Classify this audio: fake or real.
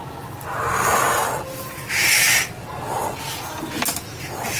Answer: real